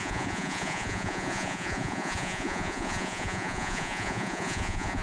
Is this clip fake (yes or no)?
yes